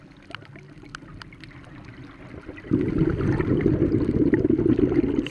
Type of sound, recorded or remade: recorded